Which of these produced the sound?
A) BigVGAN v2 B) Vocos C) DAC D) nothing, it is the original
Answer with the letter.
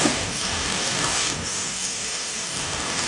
C